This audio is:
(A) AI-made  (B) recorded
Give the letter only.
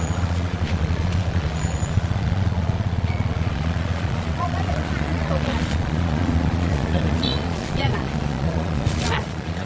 A